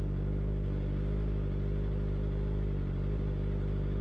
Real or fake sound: real